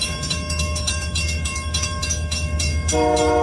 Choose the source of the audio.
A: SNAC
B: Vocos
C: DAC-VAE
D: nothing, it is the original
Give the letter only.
C